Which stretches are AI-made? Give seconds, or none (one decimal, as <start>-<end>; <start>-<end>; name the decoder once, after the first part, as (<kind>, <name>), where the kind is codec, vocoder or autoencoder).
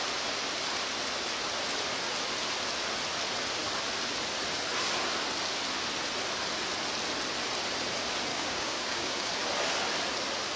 8.3-9.3 (codec, DAC)